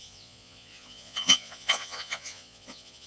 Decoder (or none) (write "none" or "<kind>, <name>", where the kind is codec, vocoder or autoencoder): vocoder, Vocos